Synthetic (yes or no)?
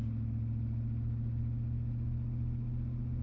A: no